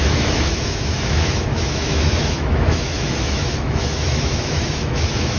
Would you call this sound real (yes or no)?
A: no